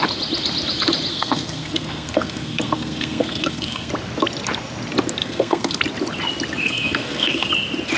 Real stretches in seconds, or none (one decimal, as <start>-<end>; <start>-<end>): 0.0-1.1; 3.9-5.2; 5.8-6.6; 7.5-8.0